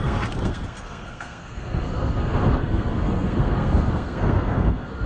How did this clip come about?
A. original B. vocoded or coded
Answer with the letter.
B